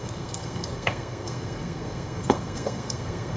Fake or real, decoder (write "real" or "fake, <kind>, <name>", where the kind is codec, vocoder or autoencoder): fake, codec, SNAC